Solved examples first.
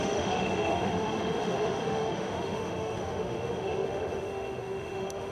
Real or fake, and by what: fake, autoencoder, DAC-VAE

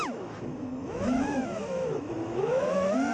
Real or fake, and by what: fake, autoencoder, DAC-VAE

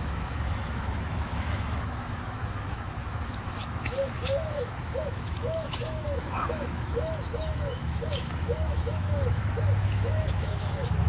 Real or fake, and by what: fake, autoencoder, DAC-VAE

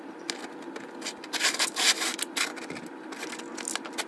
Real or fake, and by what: real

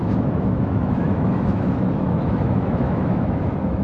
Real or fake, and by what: fake, autoencoder, DAC-VAE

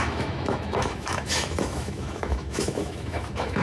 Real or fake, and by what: fake, autoencoder, DAC-VAE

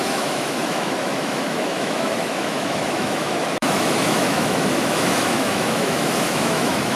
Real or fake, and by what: fake, autoencoder, DAC-VAE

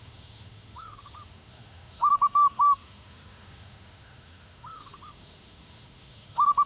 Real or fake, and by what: fake, autoencoder, DAC-VAE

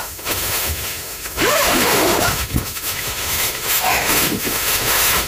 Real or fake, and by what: fake, autoencoder, DAC-VAE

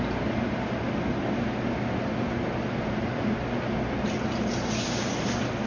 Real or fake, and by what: real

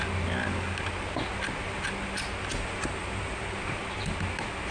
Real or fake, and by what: real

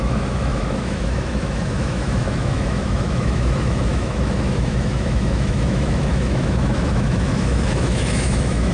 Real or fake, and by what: fake, autoencoder, DAC-VAE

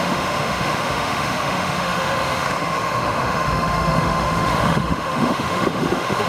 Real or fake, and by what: fake, autoencoder, DAC-VAE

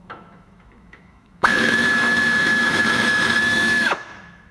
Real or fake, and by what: fake, autoencoder, DAC-VAE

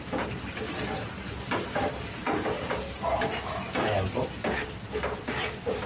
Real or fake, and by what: real